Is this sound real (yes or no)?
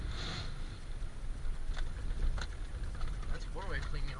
yes